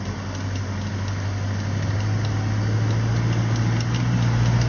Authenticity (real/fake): real